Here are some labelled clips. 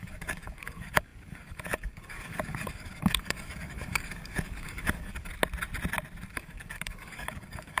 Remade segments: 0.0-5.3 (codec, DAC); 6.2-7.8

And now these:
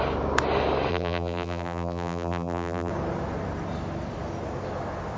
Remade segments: 0.9-2.9 (vocoder, BigVGAN v2)

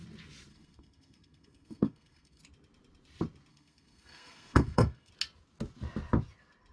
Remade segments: 0.5-2.4 (codec, SNAC); 3.5-5.1

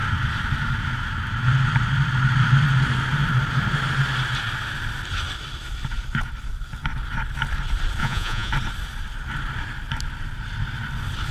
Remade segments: 8.0-8.5 (vocoder, Vocos)